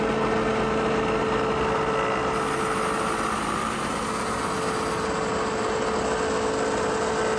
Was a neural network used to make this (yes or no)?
no